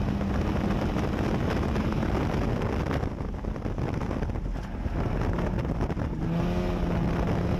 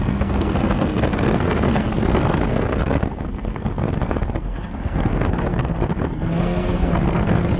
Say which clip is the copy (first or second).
second